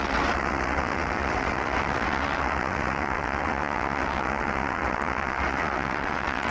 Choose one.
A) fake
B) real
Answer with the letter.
A